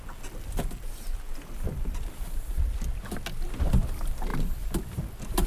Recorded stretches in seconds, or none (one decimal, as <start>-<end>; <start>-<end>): 0.0-5.5